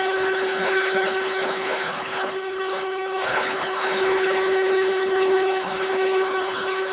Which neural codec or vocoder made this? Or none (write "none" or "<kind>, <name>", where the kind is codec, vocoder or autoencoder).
codec, HILCodec